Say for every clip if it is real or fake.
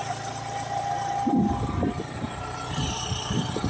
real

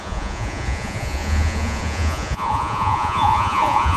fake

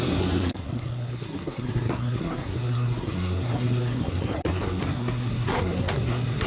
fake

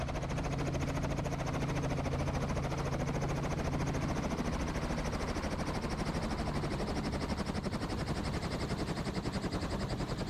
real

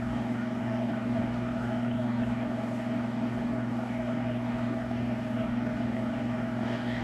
fake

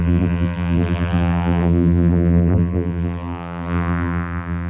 fake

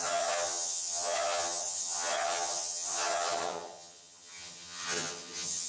fake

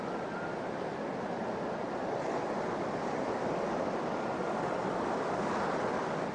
real